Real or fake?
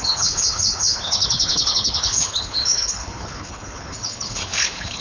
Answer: fake